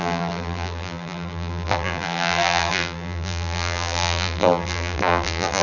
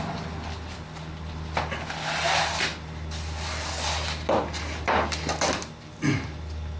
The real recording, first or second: second